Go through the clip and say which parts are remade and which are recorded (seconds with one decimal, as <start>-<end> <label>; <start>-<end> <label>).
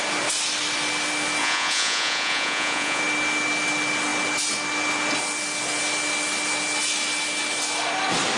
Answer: 0.0-1.4 recorded; 1.4-3.0 remade; 3.0-8.4 recorded